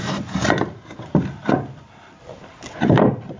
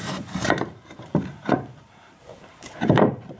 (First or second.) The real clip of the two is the first